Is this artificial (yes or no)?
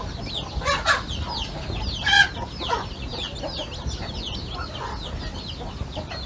no